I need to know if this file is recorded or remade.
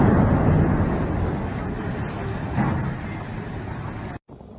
recorded